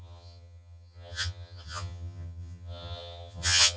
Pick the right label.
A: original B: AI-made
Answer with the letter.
B